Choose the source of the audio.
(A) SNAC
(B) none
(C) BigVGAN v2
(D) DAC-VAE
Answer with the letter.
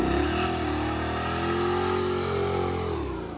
B